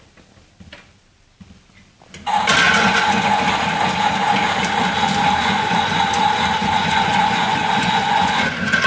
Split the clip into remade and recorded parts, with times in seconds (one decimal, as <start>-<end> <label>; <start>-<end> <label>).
0.0-2.6 recorded; 2.6-3.4 remade; 3.4-5.4 recorded; 5.4-6.0 remade; 6.0-6.6 recorded; 6.6-8.9 remade